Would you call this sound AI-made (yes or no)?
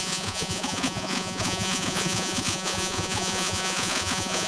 yes